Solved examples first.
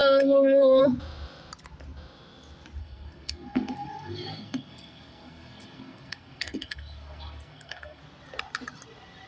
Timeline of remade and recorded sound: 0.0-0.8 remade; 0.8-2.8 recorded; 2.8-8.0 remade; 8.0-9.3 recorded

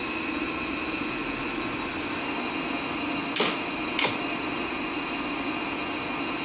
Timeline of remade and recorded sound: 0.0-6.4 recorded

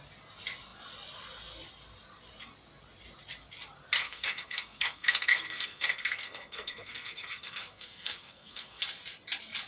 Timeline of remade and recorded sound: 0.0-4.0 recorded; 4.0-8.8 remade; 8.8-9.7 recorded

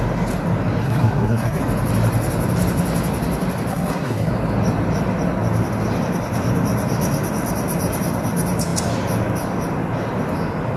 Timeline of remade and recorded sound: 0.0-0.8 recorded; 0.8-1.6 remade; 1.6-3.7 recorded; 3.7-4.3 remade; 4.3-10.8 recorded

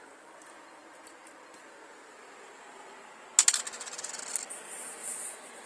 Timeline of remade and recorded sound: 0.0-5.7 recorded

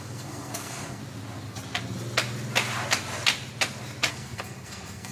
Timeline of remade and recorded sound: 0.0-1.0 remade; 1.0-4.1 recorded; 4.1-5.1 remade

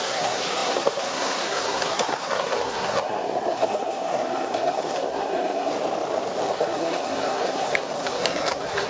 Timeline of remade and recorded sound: 0.0-5.7 remade; 5.7-6.5 recorded; 6.5-8.9 remade